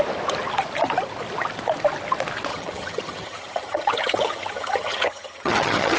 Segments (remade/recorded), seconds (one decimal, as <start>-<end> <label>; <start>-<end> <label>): 0.0-2.5 recorded; 2.5-6.0 remade